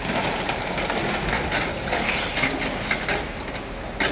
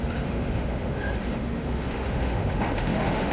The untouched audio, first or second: first